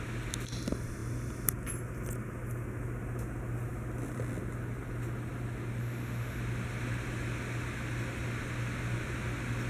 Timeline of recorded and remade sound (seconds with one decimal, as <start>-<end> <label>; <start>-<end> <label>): 0.0-5.8 recorded; 5.8-6.4 remade; 6.4-9.7 recorded